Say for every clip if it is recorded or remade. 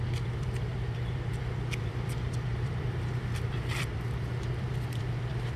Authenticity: remade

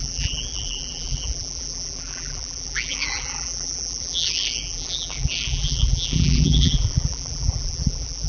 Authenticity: remade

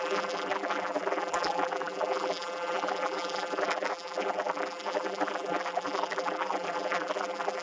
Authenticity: remade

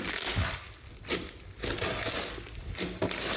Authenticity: recorded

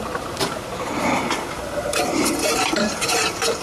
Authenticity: remade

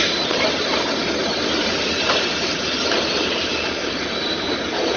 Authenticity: remade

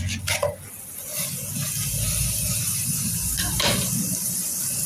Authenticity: recorded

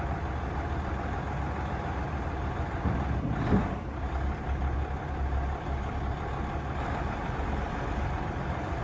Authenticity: remade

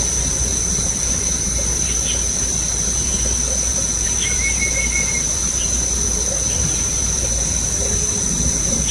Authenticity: remade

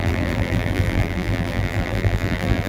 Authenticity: remade